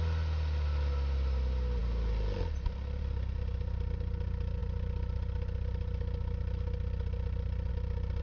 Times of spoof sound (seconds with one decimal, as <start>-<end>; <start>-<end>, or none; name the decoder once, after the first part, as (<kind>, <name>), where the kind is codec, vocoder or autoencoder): none

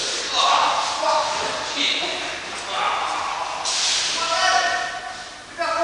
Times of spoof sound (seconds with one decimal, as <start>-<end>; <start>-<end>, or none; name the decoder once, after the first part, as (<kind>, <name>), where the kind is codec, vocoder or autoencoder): 0.0-2.8 (vocoder, BigVGAN v2); 4.5-5.0

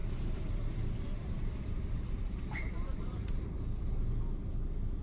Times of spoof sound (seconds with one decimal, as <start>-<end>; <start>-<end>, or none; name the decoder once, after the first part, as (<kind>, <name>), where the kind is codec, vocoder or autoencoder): 0.0-3.0 (vocoder, BigVGAN v2)

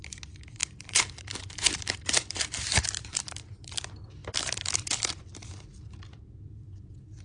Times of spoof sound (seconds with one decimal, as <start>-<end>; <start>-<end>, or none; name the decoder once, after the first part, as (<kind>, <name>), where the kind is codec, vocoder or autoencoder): 0.6-3.7 (vocoder, BigVGAN v2)